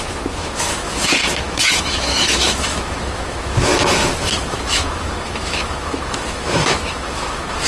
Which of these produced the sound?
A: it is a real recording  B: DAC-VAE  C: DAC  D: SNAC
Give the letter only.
B